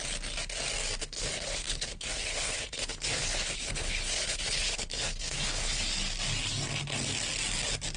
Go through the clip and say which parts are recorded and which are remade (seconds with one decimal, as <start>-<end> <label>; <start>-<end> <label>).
0.0-1.0 recorded; 1.0-5.8 remade; 5.8-8.0 recorded